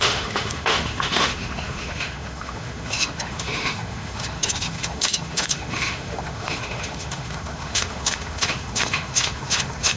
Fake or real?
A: fake